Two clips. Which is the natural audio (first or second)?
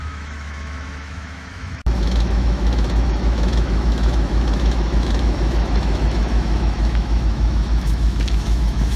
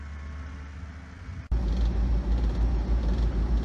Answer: second